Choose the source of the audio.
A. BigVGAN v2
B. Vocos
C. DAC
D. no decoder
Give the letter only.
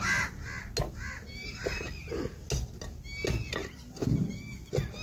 D